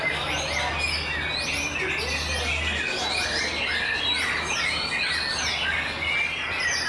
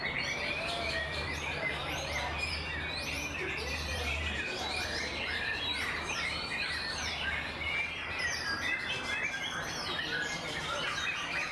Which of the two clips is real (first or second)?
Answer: first